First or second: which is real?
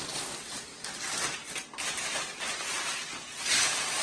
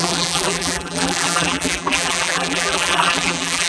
first